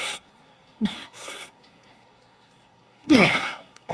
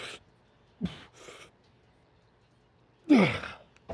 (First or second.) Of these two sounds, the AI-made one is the first